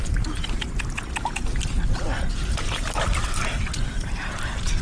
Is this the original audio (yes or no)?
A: yes